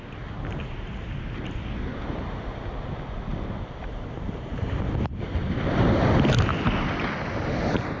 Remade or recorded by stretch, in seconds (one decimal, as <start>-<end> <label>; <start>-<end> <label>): 0.0-8.0 recorded